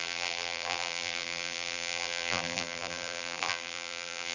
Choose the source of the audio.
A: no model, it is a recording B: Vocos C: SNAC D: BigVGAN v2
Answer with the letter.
D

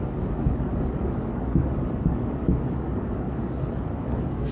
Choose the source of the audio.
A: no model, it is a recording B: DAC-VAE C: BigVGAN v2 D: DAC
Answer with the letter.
D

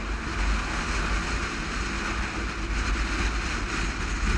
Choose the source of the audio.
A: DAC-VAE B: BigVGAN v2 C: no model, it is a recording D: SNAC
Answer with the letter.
C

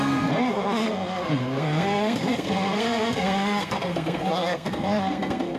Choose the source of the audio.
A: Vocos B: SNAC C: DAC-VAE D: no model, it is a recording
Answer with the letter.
B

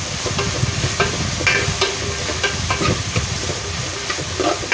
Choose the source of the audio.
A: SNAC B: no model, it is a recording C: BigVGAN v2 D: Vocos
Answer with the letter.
B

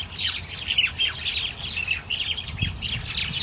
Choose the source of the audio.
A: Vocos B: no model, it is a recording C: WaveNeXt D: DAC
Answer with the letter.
B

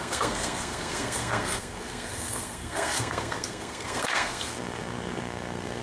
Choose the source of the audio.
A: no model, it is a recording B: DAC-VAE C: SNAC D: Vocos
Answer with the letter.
C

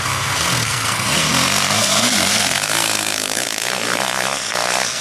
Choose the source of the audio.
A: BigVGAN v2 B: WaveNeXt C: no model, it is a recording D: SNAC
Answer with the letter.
D